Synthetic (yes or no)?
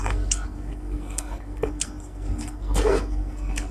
yes